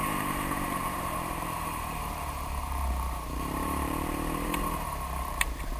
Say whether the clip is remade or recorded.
remade